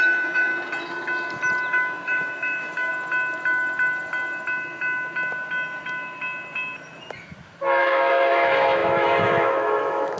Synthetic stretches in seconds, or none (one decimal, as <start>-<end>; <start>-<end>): 0.0-0.5; 1.7-2.9; 7.8-10.2